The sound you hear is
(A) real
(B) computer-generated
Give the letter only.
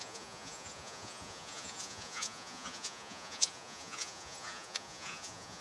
B